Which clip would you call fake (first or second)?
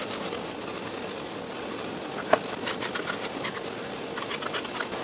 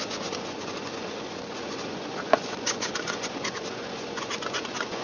second